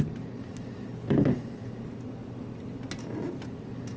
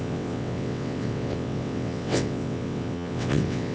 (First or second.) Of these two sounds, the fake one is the second